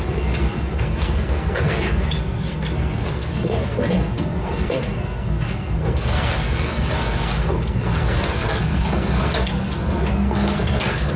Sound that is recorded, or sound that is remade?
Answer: remade